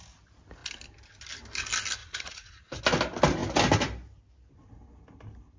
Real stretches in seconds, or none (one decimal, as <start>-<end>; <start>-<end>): 0.0-2.0; 2.8-5.6